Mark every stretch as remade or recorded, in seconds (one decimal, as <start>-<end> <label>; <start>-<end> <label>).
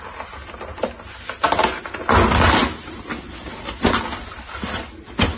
0.0-5.4 recorded